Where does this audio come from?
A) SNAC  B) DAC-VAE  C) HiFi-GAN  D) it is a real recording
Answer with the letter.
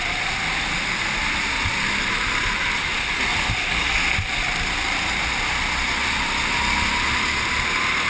D